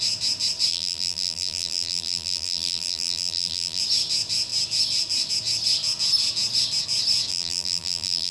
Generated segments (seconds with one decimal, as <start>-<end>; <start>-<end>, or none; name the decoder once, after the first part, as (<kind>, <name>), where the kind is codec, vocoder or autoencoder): 0.7-3.8 (vocoder, BigVGAN v2); 7.3-8.3